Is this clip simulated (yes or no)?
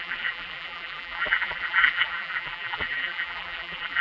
yes